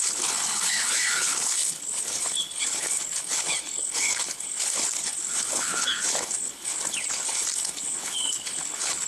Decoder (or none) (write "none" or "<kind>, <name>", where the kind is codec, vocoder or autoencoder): codec, HILCodec